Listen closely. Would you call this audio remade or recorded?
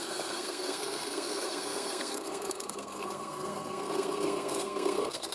remade